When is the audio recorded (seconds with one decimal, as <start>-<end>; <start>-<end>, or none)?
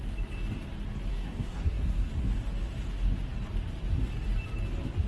0.0-1.1; 2.1-5.1